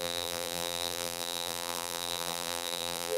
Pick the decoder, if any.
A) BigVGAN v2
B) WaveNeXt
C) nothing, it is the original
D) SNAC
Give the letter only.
A